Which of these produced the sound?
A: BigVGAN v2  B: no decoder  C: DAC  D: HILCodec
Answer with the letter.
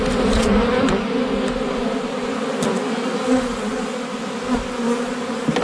B